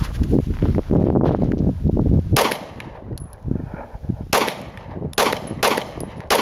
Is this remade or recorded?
recorded